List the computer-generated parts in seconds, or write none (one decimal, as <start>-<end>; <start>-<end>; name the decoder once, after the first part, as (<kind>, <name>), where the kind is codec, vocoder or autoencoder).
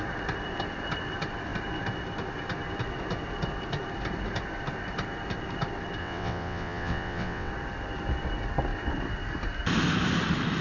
6.0-7.5 (vocoder, WaveNeXt)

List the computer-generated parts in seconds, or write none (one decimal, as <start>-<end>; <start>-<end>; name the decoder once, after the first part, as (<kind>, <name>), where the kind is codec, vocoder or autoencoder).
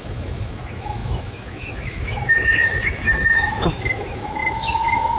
0.0-5.2 (autoencoder, DAC-VAE)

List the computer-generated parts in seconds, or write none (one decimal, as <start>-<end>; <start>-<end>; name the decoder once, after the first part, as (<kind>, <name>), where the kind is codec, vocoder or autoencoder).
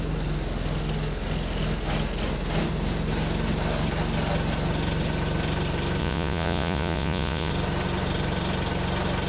6.0-7.5 (vocoder, Vocos)